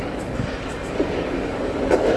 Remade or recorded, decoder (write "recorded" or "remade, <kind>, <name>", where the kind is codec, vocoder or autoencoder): remade, codec, DAC